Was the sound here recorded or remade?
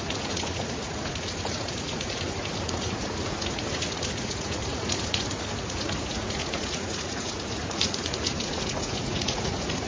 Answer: remade